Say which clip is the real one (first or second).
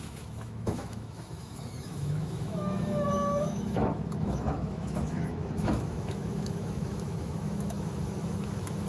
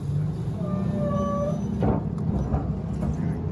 second